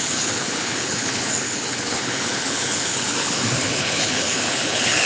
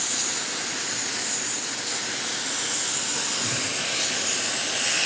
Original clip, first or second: second